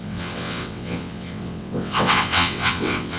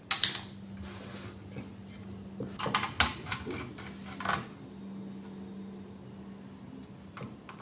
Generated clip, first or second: first